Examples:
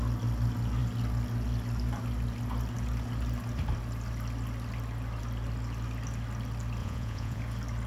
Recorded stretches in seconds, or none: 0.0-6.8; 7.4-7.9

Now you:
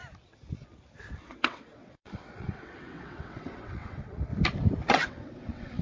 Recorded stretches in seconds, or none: 0.0-1.2; 4.3-4.9